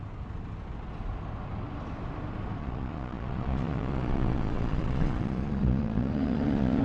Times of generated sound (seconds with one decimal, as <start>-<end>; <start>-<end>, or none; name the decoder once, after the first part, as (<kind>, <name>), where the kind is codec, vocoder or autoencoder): 2.6-6.8 (vocoder, Vocos)